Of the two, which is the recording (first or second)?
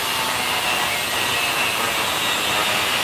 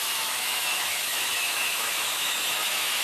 first